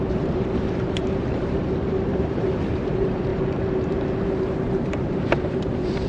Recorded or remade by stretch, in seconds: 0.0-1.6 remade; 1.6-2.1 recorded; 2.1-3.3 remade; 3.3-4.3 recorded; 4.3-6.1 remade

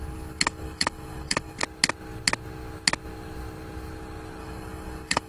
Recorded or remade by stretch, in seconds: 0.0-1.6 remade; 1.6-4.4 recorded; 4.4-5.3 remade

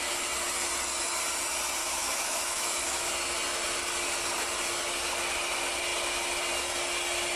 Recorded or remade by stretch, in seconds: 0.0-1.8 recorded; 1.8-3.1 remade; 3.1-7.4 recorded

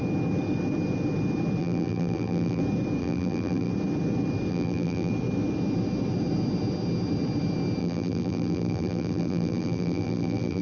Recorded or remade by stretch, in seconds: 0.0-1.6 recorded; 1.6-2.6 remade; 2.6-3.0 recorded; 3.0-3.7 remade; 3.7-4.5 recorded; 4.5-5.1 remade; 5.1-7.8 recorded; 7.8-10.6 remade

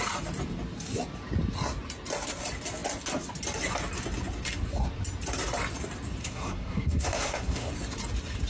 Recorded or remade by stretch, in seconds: 0.0-6.2 recorded; 6.2-7.7 remade; 7.7-8.5 recorded

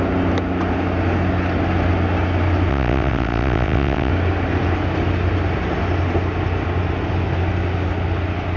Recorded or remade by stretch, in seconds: 0.0-2.7 recorded; 2.7-4.1 remade; 4.1-8.6 recorded